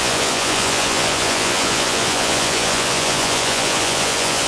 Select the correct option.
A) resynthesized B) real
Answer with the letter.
A